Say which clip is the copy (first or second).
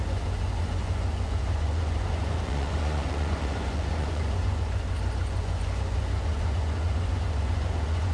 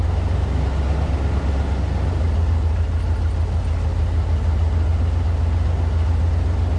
first